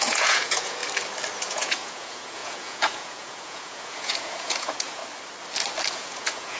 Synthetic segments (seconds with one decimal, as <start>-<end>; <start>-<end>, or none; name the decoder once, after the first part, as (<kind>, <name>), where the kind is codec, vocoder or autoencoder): 0.0-0.8 (vocoder, Vocos); 1.4-5.0; 5.9-6.6

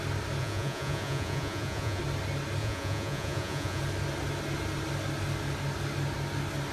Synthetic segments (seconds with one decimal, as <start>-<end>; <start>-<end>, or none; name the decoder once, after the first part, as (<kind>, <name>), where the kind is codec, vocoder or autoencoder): 0.4-2.0 (vocoder, Vocos); 2.6-3.8

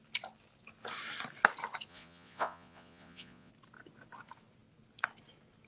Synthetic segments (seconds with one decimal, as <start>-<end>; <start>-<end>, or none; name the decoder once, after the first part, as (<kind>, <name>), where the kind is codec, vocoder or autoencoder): 1.9-3.5 (vocoder, Vocos)

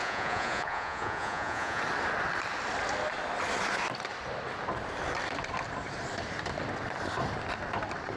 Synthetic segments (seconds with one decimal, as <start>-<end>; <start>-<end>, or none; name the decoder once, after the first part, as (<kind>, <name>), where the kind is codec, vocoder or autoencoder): 0.0-1.8 (vocoder, Vocos)

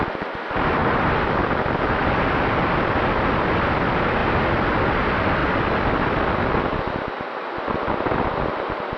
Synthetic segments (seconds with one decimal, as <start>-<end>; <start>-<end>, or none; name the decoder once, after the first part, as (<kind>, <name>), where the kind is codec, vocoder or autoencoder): none

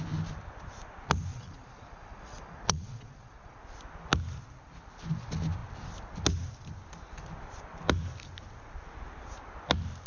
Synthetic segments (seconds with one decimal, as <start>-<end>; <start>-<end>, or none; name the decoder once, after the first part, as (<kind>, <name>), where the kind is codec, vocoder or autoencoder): 1.3-3.6 (vocoder, Vocos)

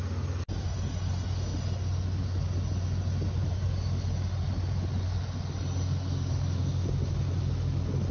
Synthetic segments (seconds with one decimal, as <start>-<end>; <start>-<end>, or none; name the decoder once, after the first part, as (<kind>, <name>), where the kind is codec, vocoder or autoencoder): none